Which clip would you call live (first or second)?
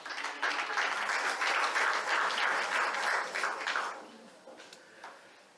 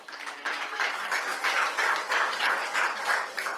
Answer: first